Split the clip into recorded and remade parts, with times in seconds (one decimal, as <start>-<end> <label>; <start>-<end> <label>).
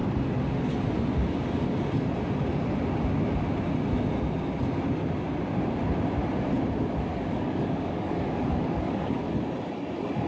0.0-7.1 recorded; 7.1-9.3 remade; 9.3-10.3 recorded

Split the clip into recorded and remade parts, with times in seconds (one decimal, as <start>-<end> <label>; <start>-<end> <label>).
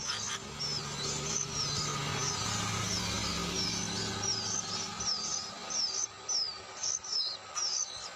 0.0-8.2 recorded